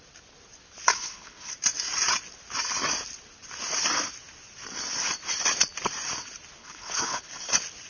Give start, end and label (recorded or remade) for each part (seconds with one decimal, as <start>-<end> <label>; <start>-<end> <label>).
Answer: 0.0-0.9 recorded; 0.9-1.5 remade; 1.5-6.6 recorded; 6.6-7.3 remade; 7.3-7.9 recorded